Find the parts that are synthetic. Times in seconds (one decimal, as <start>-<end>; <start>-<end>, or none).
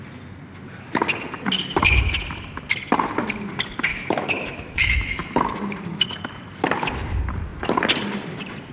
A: 3.9-5.4